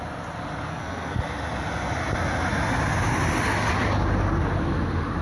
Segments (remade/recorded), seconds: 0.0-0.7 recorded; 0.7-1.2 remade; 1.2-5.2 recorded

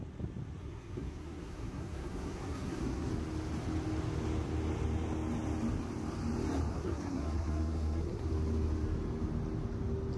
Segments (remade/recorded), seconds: 0.0-0.6 recorded; 0.6-3.1 remade; 3.1-6.7 recorded; 6.7-8.2 remade; 8.2-10.2 recorded

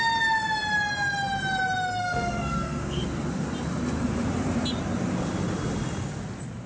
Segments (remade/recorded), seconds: 0.0-2.0 recorded; 2.0-3.0 remade; 3.0-6.7 recorded

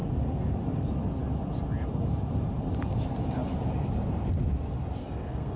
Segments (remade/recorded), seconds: 0.0-5.0 recorded; 5.0-5.6 remade

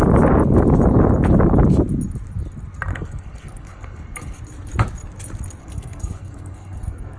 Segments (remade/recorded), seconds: 0.0-2.9 recorded; 2.9-4.4 remade; 4.4-5.6 recorded; 5.6-7.2 remade

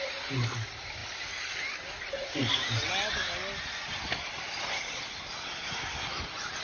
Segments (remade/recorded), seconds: 0.0-6.6 recorded